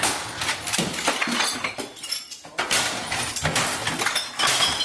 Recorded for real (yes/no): yes